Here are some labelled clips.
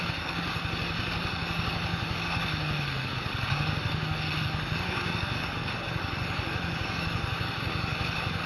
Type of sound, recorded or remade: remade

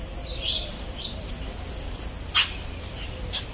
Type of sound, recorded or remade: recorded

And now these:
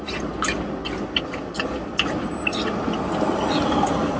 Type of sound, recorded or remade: recorded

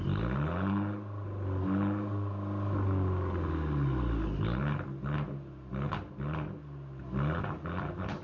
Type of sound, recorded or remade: recorded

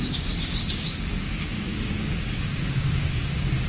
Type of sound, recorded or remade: remade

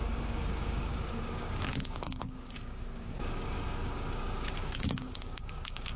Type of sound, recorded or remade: remade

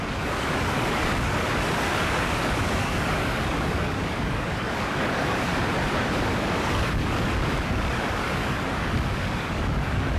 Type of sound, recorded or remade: remade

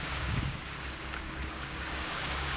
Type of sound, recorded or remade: remade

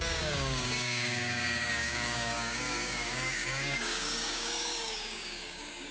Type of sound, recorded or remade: remade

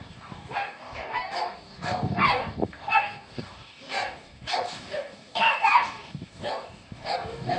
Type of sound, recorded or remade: remade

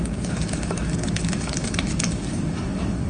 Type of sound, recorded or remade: remade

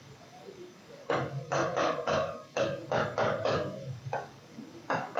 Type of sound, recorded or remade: remade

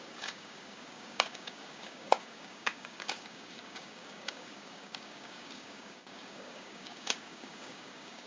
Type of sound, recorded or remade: remade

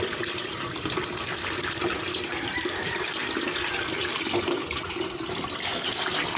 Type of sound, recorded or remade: recorded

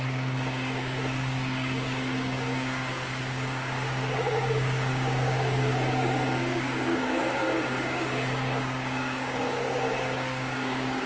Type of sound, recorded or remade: remade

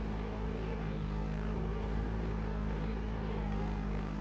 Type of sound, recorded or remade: remade